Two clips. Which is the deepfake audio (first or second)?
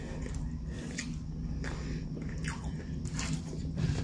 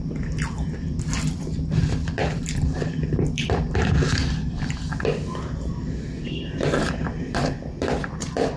second